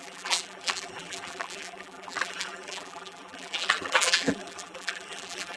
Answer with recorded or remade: remade